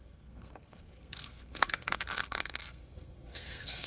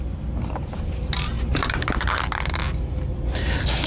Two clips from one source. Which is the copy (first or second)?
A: first